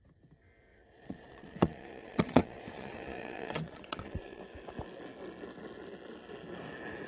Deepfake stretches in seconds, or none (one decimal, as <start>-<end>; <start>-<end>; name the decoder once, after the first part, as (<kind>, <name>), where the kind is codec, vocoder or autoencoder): 0.7-4.4 (vocoder, Vocos)